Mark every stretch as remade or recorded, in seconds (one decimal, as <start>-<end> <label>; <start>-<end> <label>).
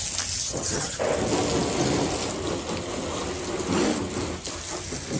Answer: 0.0-0.4 recorded; 0.4-1.0 remade; 1.0-5.2 recorded